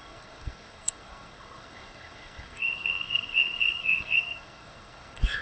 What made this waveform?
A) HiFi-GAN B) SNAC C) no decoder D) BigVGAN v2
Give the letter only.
B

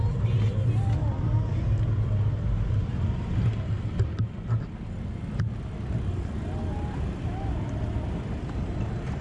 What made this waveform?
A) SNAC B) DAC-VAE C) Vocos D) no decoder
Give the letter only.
D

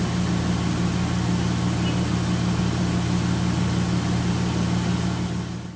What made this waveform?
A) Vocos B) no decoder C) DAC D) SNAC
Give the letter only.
B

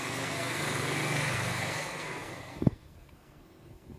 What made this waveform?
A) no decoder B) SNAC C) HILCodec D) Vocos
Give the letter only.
B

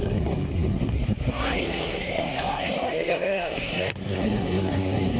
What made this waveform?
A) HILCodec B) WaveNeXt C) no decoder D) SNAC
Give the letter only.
D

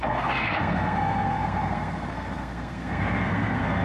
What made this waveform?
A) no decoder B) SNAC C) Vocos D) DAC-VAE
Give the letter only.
B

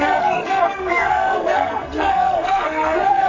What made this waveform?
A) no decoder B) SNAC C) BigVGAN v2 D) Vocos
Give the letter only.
B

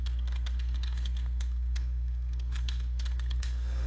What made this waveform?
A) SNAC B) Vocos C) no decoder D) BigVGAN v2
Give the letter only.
A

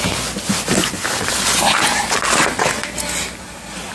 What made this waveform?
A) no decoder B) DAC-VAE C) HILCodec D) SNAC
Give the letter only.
A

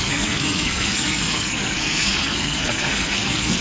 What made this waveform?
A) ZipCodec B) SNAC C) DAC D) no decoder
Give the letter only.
B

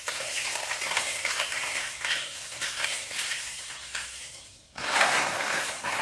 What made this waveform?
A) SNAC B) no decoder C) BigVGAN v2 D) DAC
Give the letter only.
A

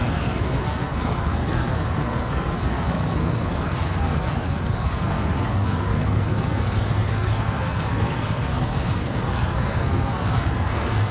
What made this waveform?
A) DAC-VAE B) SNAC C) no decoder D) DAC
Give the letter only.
B